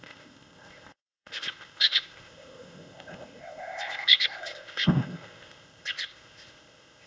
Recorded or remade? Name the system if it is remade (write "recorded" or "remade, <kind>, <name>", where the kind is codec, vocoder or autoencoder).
remade, codec, ZipCodec